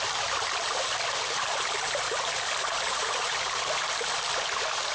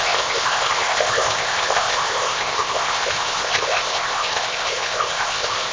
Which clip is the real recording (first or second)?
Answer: first